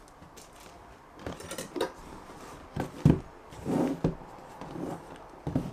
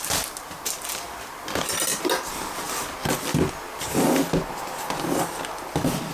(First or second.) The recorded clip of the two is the second